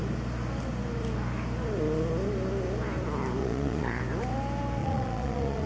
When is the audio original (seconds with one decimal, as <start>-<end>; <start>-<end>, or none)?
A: 0.0-3.4; 4.0-4.8